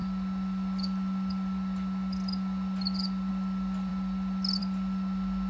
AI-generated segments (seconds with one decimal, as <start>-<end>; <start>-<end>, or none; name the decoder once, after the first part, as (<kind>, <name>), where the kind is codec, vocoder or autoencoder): none